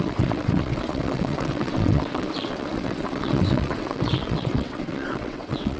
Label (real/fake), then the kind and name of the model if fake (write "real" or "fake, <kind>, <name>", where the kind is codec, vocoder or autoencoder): fake, vocoder, WaveNeXt